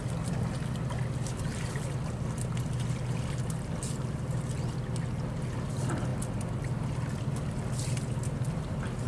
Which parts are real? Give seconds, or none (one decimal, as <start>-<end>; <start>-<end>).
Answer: 0.0-9.1